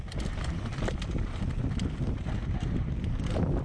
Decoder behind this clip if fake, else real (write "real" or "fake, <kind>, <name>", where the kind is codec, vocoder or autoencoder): real